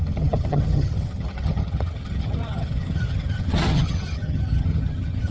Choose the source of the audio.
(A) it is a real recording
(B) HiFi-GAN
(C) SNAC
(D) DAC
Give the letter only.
B